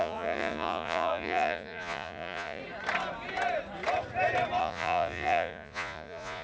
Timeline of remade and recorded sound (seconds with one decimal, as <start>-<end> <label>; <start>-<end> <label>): 0.0-2.6 remade; 2.6-4.6 recorded; 4.6-6.4 remade